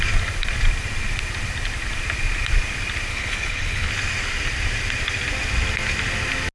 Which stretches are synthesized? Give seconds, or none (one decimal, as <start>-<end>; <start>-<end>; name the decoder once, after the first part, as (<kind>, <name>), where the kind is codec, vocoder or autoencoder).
3.1-3.9 (codec, HILCodec)